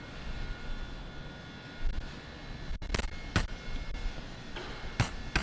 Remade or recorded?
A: recorded